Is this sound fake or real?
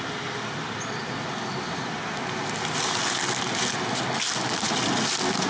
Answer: real